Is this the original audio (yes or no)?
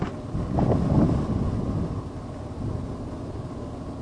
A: yes